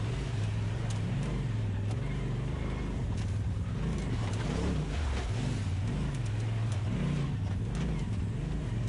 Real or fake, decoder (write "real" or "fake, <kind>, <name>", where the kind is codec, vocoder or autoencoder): fake, vocoder, BigVGAN v2